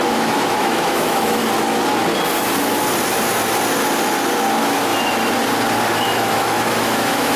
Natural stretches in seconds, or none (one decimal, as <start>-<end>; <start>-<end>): 1.4-4.5; 4.9-6.0

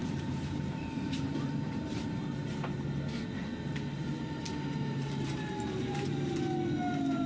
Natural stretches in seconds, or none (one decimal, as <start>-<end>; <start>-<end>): 2.1-4.0; 6.1-7.3

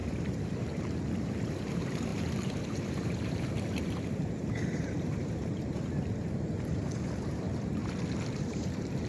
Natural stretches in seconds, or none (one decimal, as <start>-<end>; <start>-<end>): 0.0-0.6; 7.8-8.4

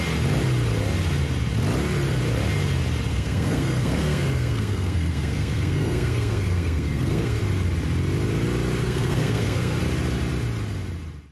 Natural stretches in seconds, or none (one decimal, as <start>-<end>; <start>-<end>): 0.0-3.1; 7.4-8.8; 9.8-11.3

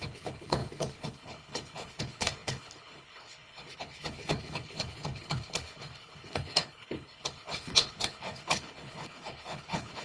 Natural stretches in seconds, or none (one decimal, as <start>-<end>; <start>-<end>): none